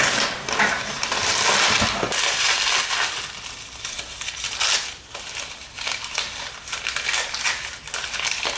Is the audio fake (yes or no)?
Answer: no